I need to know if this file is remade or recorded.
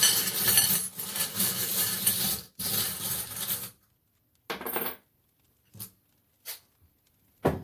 recorded